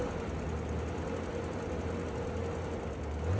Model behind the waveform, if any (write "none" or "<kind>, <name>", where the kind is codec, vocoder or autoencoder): none